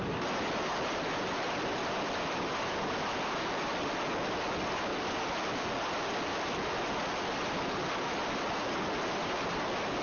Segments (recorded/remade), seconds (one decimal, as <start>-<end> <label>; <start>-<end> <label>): 0.0-4.9 remade; 4.9-7.4 recorded; 7.4-10.0 remade